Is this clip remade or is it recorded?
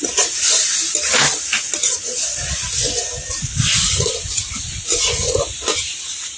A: recorded